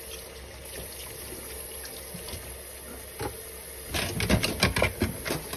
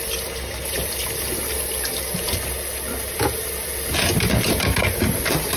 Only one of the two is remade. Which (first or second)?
second